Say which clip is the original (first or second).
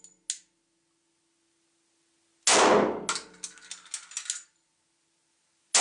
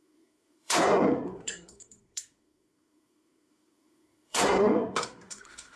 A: first